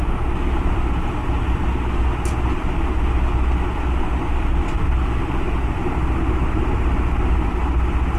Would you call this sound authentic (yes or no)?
yes